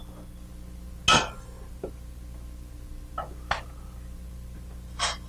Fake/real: real